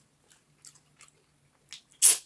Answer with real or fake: real